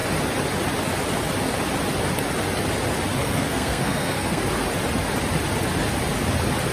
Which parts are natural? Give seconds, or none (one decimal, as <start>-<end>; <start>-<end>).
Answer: 0.0-3.2; 4.4-6.7